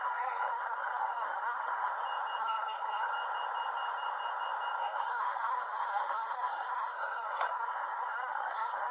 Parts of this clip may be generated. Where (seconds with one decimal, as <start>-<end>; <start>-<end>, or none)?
0.0-1.9; 2.4-3.1; 4.8-8.9